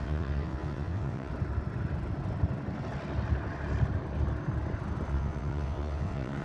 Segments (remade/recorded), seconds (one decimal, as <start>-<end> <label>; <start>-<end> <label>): 0.0-1.3 remade; 1.3-5.1 recorded; 5.1-6.4 remade